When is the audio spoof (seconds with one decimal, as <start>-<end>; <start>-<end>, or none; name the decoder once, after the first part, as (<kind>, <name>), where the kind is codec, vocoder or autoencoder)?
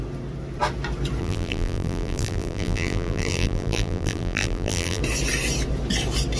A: 1.2-5.0 (vocoder, BigVGAN v2)